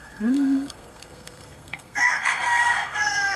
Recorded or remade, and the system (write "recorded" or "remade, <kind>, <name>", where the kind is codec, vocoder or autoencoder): remade, codec, SNAC